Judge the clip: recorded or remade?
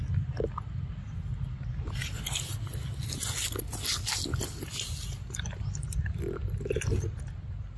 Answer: recorded